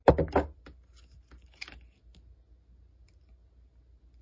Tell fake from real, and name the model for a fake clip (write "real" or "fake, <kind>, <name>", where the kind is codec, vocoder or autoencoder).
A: real